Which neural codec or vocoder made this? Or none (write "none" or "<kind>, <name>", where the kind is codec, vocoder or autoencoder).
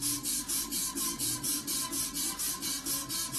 none